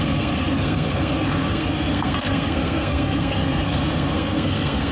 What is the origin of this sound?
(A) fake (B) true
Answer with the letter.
A